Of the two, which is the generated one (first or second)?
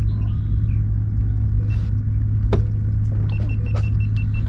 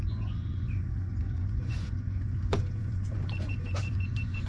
second